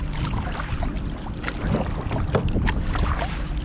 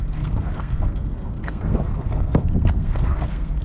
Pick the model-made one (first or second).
second